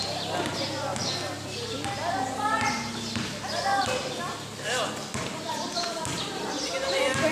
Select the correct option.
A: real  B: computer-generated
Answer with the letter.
A